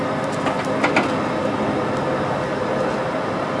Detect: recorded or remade recorded